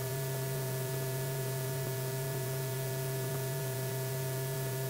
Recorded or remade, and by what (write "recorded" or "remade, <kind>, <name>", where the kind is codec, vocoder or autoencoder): remade, vocoder, Vocos